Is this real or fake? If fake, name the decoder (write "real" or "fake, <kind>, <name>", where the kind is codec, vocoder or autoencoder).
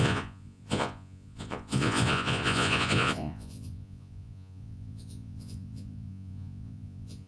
fake, vocoder, Vocos